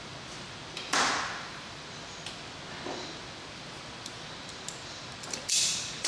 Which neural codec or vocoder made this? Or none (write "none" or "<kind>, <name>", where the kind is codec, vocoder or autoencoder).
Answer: none